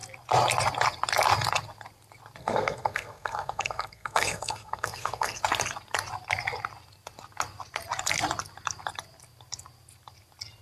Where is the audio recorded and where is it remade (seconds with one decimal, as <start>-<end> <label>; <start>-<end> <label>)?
0.0-2.4 recorded; 2.4-5.4 remade; 5.4-10.6 recorded